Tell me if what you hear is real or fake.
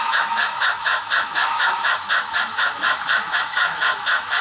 fake